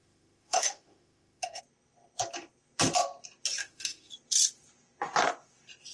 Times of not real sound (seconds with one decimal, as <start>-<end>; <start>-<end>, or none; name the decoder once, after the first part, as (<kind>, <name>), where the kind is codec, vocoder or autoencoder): 0.0-1.6 (autoencoder, DAC-VAE); 3.6-4.1